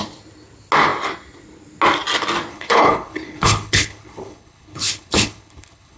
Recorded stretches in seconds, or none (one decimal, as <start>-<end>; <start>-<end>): 0.0-2.5